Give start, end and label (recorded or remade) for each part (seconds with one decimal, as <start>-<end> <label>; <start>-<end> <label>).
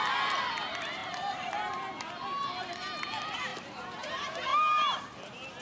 0.0-5.6 recorded